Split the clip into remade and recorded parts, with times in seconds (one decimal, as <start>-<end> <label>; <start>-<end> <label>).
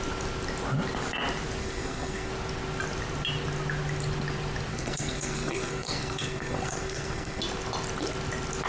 0.0-1.6 recorded; 1.6-2.3 remade; 2.3-4.7 recorded; 4.7-7.4 remade; 7.4-8.7 recorded